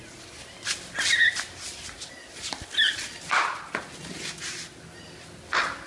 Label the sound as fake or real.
real